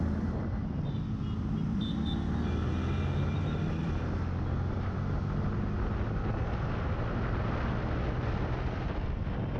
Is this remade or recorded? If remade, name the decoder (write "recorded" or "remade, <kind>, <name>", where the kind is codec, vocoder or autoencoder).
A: recorded